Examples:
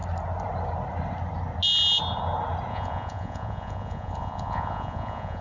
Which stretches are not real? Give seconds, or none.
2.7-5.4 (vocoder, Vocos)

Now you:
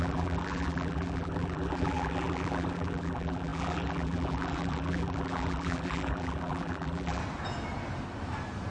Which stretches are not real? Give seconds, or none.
0.0-7.2 (vocoder, BigVGAN v2)

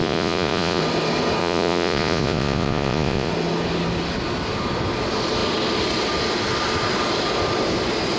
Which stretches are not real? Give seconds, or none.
0.0-0.8 (vocoder, Vocos); 1.4-3.3

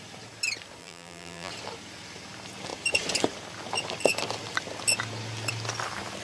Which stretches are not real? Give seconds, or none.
0.8-1.5 (vocoder, BigVGAN v2)

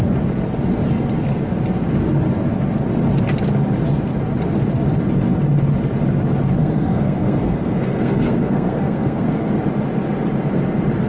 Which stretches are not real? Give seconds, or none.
6.6-9.5 (codec, SNAC)

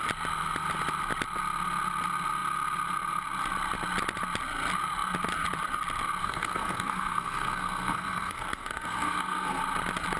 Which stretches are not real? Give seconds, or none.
6.2-9.6 (codec, SNAC)

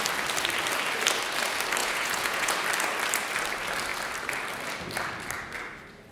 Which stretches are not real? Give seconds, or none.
1.8-2.5 (vocoder, Vocos)